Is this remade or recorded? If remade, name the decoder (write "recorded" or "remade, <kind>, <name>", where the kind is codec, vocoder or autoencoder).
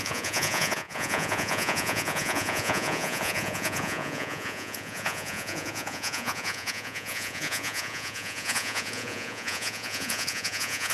remade, vocoder, Vocos